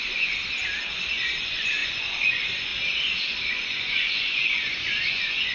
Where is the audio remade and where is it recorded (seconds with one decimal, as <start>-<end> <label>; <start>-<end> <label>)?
0.0-0.4 remade; 0.4-1.4 recorded; 1.4-2.7 remade; 2.7-3.5 recorded; 3.5-5.5 remade